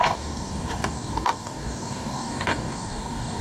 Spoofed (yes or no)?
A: yes